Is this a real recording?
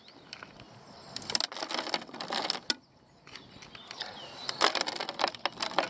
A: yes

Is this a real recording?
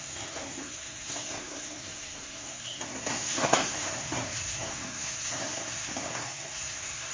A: no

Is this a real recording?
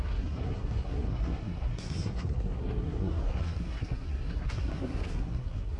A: no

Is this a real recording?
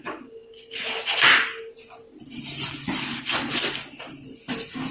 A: yes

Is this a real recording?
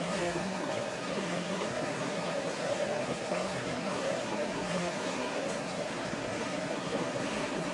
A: no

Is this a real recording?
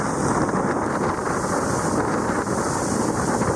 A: yes